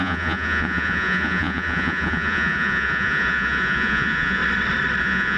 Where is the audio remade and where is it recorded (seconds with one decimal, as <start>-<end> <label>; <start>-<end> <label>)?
0.0-4.4 remade; 4.4-5.0 recorded; 5.0-5.4 remade